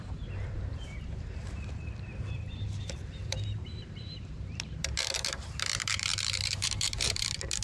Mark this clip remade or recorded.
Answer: remade